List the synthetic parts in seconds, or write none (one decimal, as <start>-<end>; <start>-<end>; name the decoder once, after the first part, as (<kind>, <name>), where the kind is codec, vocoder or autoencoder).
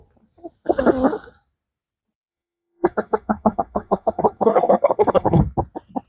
2.3-5.4 (codec, SNAC)